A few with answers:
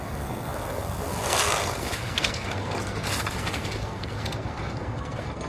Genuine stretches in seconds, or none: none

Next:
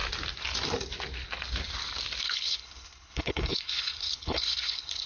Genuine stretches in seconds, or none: 0.0-2.2

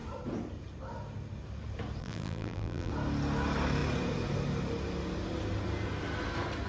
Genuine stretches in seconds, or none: 0.0-2.0; 2.9-6.7

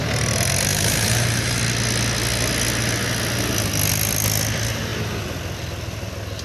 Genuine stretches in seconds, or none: 0.0-0.7; 1.6-6.4

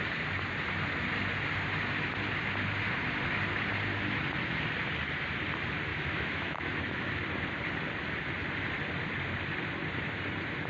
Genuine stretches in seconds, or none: 0.0-5.9; 7.1-10.7

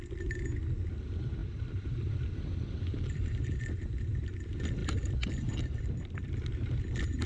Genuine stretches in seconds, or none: 0.0-1.4; 3.6-7.3

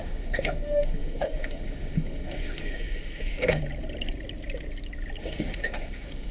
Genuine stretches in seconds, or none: 3.6-5.2